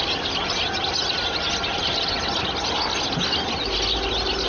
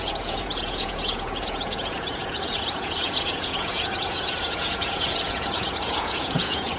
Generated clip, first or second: second